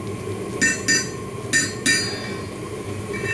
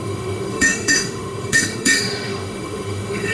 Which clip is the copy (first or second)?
second